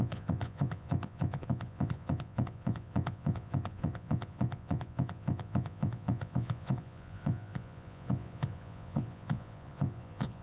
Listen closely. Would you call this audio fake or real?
fake